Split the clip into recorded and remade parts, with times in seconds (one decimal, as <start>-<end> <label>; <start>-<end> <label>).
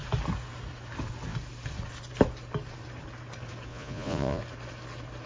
0.0-3.7 recorded; 3.7-4.4 remade; 4.4-5.3 recorded